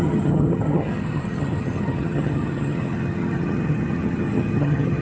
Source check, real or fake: fake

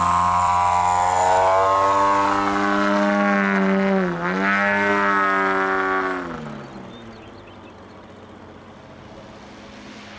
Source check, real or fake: real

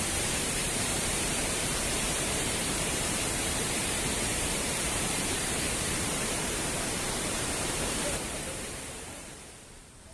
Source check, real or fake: fake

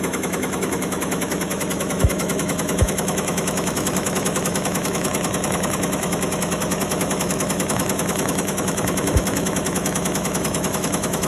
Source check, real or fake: fake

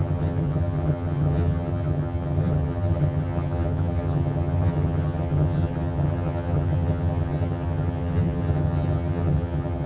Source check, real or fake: fake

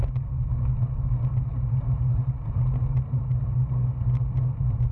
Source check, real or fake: real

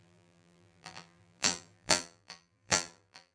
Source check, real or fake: fake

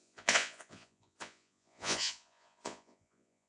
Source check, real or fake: fake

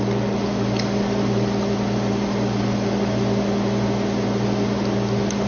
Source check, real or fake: real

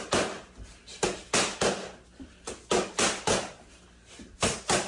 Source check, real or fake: real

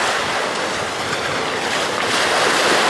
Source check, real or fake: real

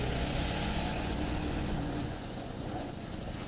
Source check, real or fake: fake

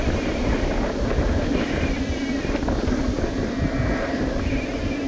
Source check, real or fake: real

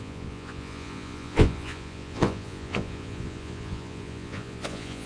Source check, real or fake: fake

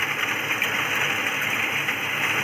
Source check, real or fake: real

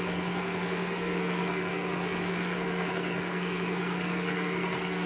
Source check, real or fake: fake